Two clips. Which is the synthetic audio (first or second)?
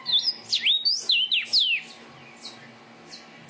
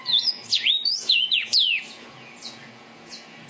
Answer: second